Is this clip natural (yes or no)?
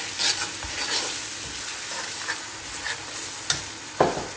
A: yes